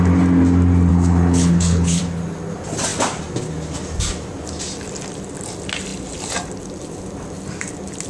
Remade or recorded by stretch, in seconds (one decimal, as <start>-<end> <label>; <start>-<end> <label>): 0.0-0.9 recorded; 0.9-2.0 remade; 2.0-8.1 recorded